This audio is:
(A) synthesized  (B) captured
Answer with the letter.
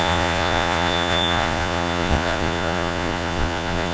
A